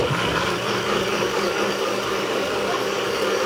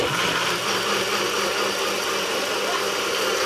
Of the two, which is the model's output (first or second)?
first